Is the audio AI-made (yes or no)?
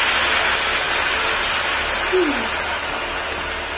no